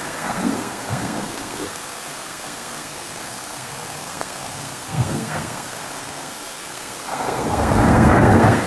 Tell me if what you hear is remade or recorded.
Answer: remade